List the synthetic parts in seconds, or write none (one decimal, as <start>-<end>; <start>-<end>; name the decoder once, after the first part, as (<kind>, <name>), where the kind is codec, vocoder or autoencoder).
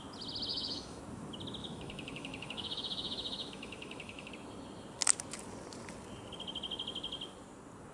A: 0.5-1.0 (autoencoder, DAC-VAE); 1.6-4.3